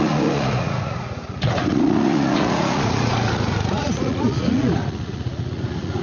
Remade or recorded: remade